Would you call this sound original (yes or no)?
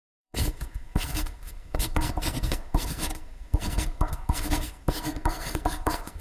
no